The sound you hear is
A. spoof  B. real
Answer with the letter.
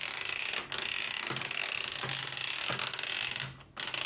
B